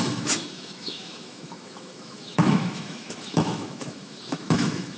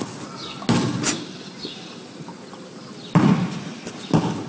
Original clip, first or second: second